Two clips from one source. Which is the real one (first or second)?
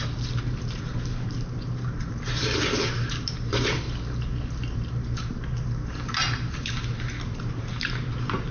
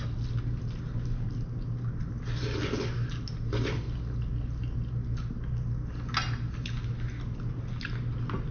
second